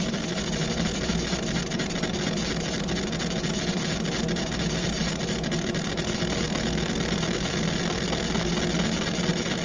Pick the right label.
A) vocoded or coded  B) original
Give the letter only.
B